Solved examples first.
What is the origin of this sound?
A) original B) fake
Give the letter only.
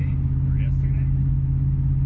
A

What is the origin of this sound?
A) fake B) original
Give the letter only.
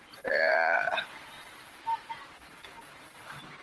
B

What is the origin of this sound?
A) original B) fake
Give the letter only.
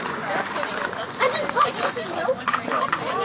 B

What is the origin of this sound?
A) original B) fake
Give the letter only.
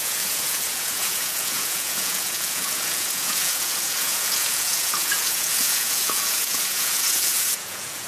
B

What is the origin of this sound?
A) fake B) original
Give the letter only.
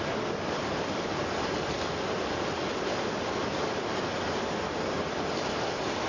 B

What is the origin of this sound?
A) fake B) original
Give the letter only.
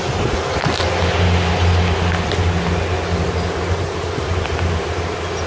B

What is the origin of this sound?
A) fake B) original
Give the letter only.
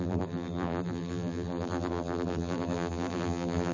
A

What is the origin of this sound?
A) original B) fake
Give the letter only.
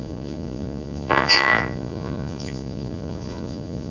B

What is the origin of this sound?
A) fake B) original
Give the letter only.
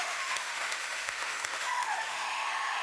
A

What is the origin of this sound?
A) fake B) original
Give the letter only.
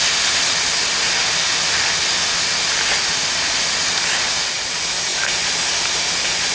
B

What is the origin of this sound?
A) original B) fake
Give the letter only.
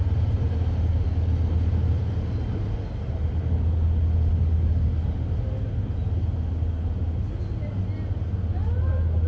A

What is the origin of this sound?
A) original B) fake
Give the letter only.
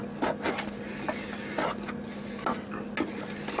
A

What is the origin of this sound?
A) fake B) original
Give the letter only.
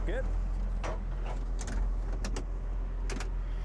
B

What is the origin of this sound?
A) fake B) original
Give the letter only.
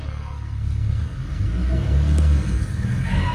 A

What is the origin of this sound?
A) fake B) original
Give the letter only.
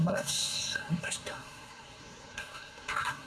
A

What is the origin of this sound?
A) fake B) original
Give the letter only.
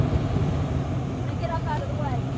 B